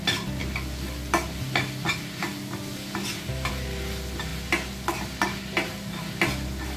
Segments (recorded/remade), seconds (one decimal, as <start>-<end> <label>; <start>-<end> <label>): 0.0-6.8 recorded